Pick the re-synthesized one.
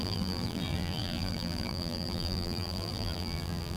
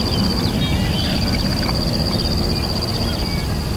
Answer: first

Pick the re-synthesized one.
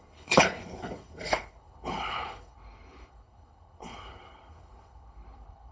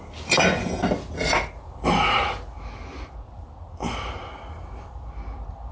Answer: first